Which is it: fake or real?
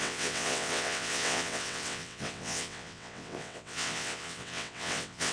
fake